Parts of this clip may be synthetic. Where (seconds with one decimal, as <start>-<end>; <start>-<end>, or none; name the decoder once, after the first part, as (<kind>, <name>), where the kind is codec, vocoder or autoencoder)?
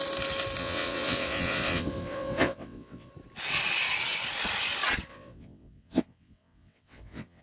0.6-3.1 (vocoder, WaveNeXt); 5.1-7.4